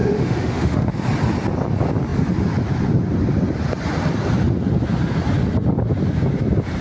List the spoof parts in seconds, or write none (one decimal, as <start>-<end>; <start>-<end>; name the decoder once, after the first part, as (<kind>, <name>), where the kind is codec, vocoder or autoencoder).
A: 0.0-0.9 (autoencoder, DAC-VAE)